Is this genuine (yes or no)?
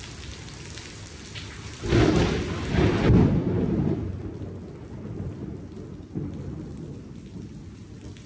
yes